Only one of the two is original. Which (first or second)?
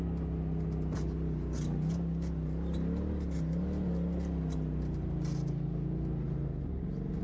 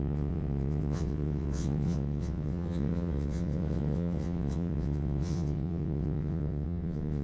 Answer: first